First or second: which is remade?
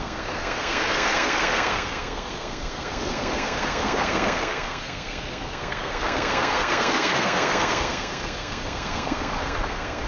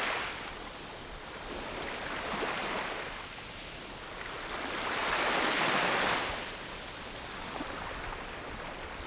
first